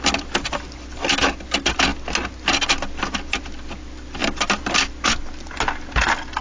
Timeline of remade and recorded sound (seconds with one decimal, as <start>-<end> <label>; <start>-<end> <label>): 0.0-6.4 recorded